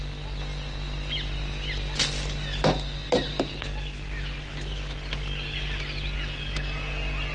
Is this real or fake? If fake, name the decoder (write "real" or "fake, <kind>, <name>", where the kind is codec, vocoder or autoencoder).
real